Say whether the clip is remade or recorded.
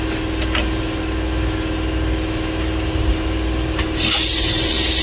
recorded